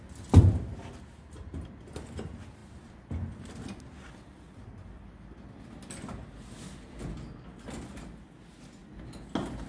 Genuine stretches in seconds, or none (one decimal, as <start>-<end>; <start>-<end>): 0.0-9.7